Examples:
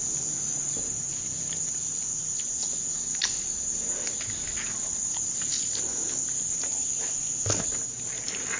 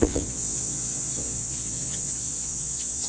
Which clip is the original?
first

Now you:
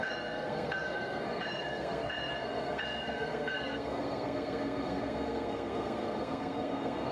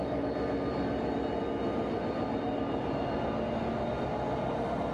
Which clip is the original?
second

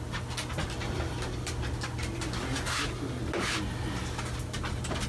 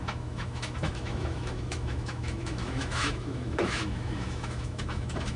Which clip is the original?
first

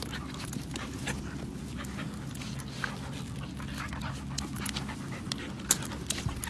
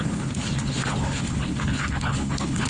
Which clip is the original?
first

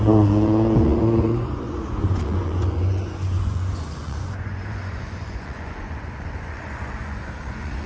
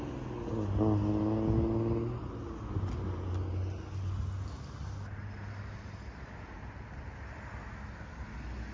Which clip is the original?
second